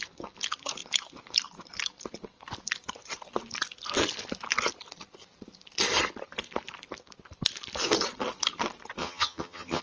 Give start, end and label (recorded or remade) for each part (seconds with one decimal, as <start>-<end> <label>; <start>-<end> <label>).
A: 0.0-9.0 recorded; 9.0-9.8 remade